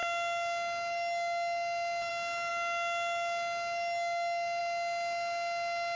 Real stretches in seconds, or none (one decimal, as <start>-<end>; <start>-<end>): 0.0-6.0